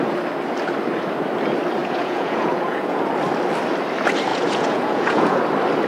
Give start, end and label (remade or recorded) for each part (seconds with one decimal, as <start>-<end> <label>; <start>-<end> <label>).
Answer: 0.0-1.8 recorded; 1.8-3.0 remade; 3.0-4.3 recorded; 4.3-5.4 remade; 5.4-5.9 recorded